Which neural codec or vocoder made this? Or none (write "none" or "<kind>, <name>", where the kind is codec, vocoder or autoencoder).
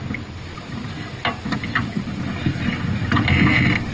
none